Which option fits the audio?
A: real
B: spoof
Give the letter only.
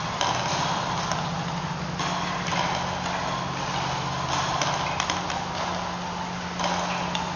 A